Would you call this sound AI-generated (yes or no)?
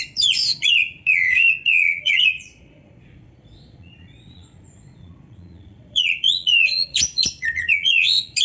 yes